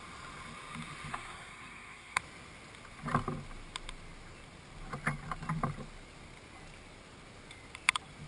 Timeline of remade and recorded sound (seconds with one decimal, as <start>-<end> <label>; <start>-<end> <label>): 0.0-1.1 recorded; 1.1-2.2 remade; 2.2-8.3 recorded